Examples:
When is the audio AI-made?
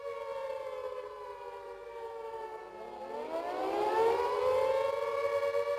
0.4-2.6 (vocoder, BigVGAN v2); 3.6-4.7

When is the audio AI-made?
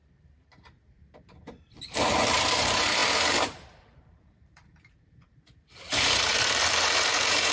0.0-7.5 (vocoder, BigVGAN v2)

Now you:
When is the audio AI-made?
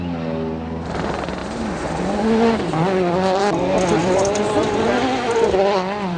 4.0-6.2 (vocoder, BigVGAN v2)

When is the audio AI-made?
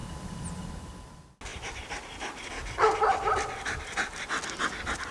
0.0-0.7 (vocoder, BigVGAN v2); 1.5-2.5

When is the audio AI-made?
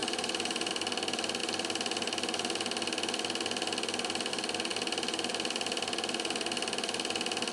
0.0-0.7 (vocoder, BigVGAN v2)